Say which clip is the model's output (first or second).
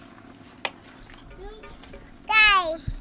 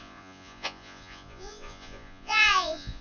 second